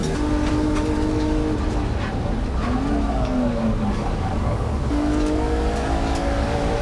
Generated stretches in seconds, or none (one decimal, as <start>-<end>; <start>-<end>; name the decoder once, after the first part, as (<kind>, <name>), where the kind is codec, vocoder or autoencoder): 0.5-1.4 (codec, DAC); 3.1-6.8